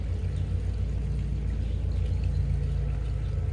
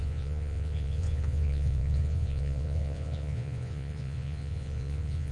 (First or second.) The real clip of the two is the first